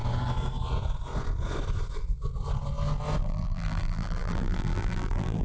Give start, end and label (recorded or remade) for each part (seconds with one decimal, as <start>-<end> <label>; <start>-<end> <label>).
0.0-3.2 recorded; 3.2-5.4 remade